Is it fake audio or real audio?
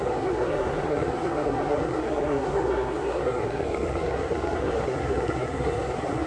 fake